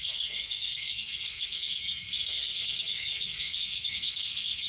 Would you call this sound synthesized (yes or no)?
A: yes